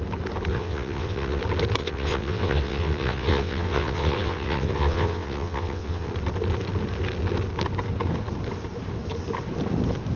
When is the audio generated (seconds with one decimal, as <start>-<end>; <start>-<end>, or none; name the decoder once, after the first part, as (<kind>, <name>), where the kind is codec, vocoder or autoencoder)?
0.5-1.4 (vocoder, WaveNeXt); 1.8-6.1